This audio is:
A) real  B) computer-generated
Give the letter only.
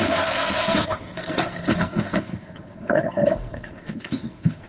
B